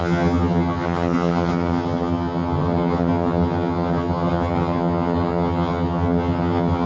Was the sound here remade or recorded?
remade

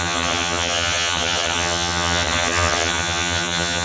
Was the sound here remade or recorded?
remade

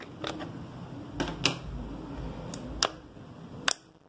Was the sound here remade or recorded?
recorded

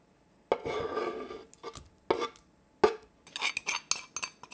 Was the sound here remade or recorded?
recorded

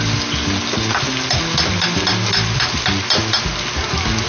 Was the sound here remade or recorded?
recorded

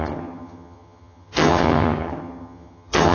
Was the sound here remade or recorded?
remade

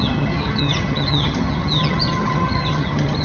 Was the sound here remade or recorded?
remade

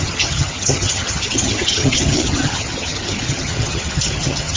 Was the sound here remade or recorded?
remade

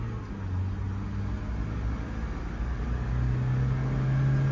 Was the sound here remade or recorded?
recorded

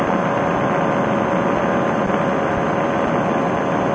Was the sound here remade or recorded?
recorded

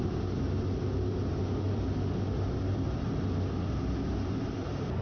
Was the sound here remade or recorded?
recorded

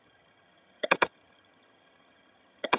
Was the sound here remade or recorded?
remade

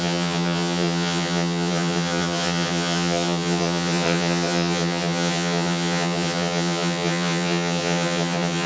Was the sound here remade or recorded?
remade